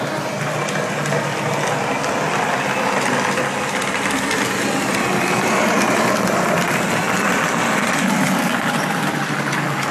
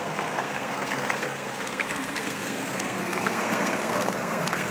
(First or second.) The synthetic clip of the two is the second